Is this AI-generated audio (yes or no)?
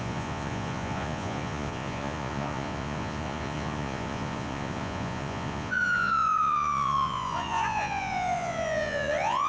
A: yes